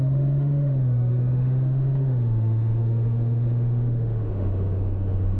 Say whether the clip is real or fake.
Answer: fake